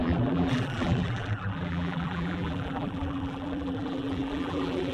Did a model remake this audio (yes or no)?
yes